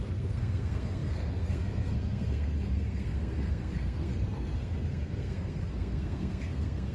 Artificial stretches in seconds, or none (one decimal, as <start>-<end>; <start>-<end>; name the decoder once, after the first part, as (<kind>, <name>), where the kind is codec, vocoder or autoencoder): 0.0-6.9 (codec, SNAC)